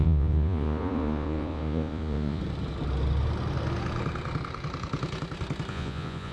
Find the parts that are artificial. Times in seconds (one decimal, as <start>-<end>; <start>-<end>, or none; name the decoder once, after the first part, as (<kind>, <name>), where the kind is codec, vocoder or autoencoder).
0.0-2.4 (vocoder, Vocos); 5.7-6.3